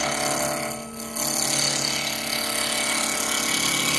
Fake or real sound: real